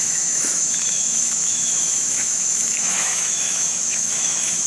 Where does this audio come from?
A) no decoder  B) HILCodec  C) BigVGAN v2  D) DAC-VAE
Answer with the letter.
D